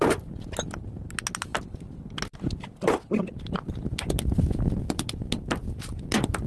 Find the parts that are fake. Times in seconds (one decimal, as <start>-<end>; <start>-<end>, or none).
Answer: none